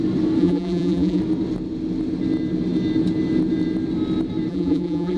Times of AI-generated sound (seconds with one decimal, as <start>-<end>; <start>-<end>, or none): 0.4-1.2; 4.5-5.2